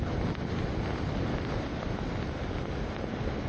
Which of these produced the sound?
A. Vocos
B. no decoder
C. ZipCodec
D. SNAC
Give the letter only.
B